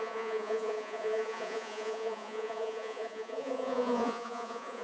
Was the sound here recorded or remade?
remade